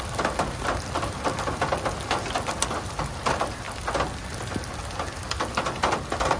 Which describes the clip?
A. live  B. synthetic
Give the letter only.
A